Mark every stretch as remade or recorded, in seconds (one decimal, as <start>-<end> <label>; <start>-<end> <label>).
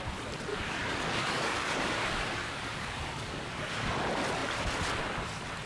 0.0-0.5 recorded; 0.5-3.9 remade; 3.9-5.7 recorded